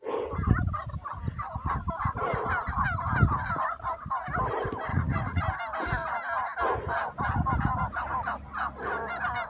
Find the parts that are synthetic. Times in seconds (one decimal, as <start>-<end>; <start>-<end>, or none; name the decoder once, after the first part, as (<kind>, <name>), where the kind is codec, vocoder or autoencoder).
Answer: 4.9-5.4 (vocoder, Vocos)